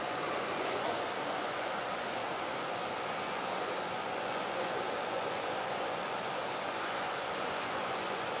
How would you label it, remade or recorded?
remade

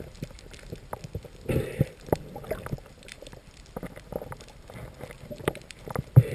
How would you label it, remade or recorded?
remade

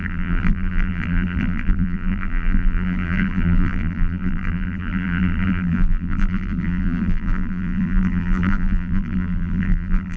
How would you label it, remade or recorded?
remade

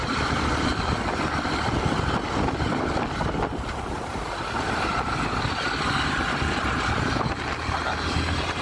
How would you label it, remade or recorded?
recorded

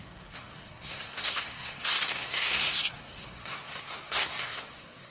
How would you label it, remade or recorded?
remade